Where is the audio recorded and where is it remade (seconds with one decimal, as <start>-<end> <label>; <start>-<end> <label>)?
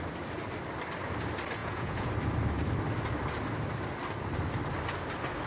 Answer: 0.0-1.6 recorded; 1.6-2.1 remade; 2.1-5.5 recorded